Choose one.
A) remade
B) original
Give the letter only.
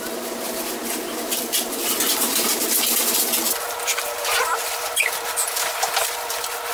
B